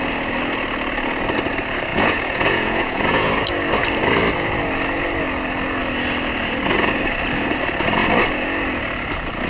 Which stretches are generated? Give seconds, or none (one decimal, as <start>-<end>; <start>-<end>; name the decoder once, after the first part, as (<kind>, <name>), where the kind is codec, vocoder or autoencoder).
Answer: 1.9-3.3 (vocoder, Vocos)